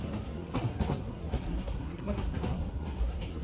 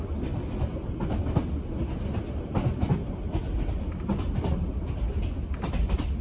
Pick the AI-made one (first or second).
first